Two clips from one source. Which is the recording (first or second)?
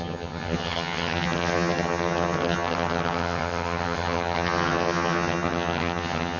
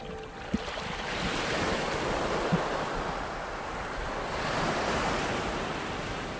second